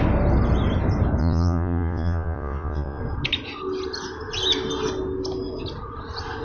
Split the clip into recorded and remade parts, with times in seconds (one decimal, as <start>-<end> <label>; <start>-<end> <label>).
0.0-1.2 recorded; 1.2-3.0 remade; 3.0-6.4 recorded